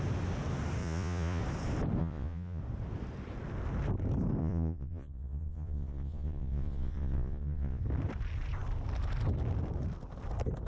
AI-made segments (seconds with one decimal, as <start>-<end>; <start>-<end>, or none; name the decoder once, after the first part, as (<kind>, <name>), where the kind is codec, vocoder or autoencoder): 0.8-1.4 (vocoder, Vocos); 2.0-2.6; 4.4-7.8